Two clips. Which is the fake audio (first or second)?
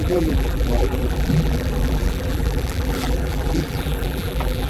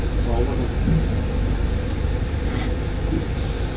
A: first